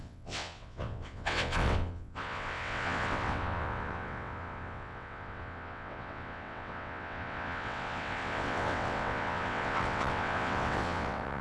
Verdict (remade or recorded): remade